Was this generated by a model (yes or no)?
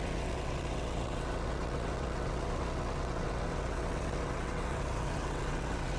yes